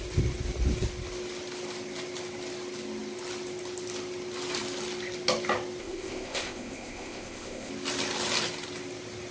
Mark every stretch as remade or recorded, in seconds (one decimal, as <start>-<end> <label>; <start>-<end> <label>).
0.0-5.8 recorded; 5.8-7.7 remade; 7.7-9.3 recorded